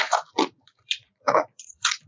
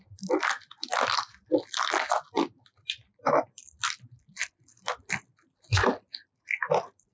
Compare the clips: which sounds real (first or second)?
second